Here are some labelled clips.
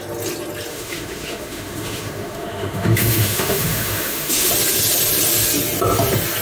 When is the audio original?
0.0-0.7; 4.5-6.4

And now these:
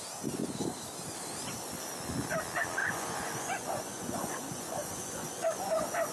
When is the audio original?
0.0-2.8

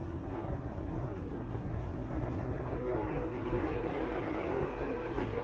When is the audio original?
none

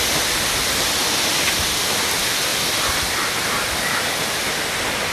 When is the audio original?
0.0-5.1

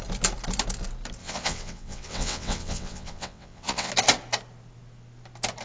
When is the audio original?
0.0-1.2; 3.9-5.6

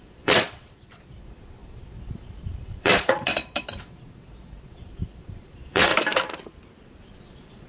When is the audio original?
5.9-7.0